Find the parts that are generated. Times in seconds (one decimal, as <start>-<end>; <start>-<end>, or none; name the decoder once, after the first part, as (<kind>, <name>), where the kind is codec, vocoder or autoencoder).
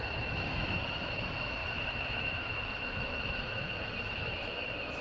0.0-5.0 (autoencoder, DAC-VAE)